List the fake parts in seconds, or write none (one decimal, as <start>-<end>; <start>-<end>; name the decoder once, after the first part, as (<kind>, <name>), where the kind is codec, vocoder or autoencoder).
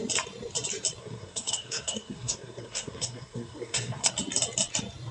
1.0-4.1 (codec, SNAC)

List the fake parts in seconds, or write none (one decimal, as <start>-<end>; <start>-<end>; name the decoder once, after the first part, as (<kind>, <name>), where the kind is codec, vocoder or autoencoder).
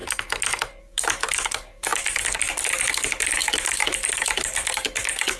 0.8-5.4 (codec, DAC)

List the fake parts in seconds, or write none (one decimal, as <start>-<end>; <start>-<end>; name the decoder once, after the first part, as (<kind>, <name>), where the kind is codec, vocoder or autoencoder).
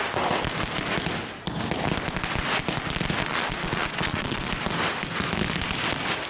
3.2-4.5 (vocoder, Vocos)